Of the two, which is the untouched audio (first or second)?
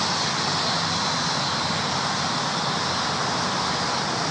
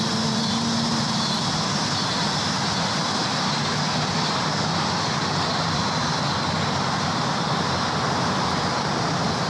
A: first